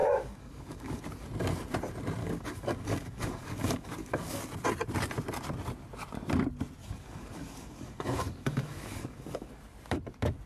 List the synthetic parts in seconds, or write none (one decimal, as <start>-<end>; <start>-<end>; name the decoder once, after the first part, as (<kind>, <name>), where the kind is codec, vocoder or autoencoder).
0.0-1.0 (codec, DAC); 2.2-4.4; 6.8-9.5